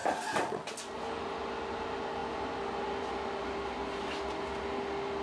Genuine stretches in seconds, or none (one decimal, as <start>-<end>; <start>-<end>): 0.0-5.2